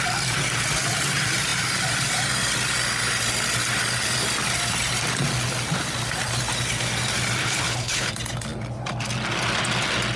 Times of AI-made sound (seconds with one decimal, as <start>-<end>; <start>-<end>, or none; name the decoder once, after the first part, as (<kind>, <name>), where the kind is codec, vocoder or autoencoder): 7.4-8.1 (codec, HILCodec)